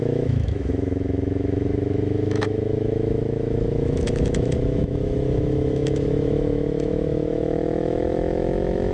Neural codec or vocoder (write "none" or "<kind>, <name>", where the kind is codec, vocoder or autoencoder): autoencoder, DAC-VAE